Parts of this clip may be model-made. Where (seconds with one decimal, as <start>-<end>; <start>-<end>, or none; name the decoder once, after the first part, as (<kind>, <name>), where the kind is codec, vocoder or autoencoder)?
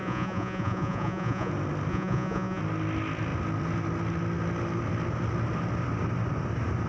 0.0-1.5 (vocoder, Vocos); 1.9-2.6